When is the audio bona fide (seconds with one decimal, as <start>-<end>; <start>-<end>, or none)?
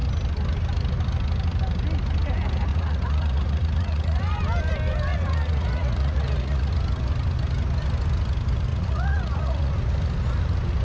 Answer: 0.0-2.7; 4.4-5.1; 6.7-8.7; 9.7-10.8